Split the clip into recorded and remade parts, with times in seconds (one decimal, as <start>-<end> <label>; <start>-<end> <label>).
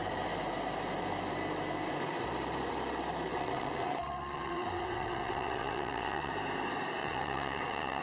0.0-3.3 recorded; 3.3-6.3 remade; 6.3-7.0 recorded; 7.0-8.0 remade